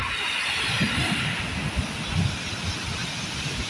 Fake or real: real